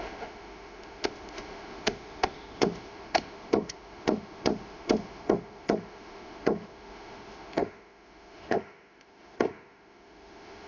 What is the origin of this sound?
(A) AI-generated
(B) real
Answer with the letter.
A